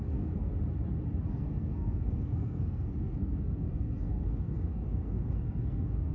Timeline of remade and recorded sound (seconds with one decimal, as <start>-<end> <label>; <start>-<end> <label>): 0.0-0.5 remade; 0.5-1.3 recorded; 1.3-6.1 remade

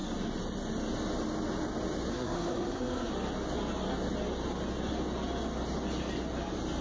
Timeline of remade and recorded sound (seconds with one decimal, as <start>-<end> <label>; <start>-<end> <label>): 0.0-2.1 recorded; 2.1-3.1 remade; 3.1-6.8 recorded

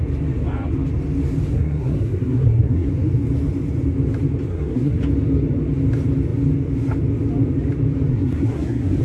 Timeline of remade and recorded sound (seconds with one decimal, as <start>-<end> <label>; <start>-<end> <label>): 0.0-1.5 recorded; 1.5-2.9 remade; 2.9-4.5 recorded; 4.5-5.0 remade; 5.0-8.1 recorded; 8.1-9.0 remade

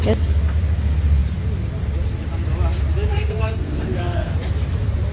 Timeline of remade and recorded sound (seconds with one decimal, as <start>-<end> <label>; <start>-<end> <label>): 0.0-3.1 recorded; 3.1-4.3 remade; 4.3-5.1 recorded

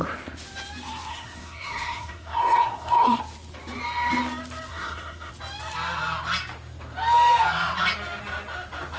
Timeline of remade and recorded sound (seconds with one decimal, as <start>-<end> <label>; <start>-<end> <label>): 0.0-1.1 recorded; 1.1-3.2 remade; 3.2-4.7 recorded; 4.7-5.3 remade; 5.3-9.0 recorded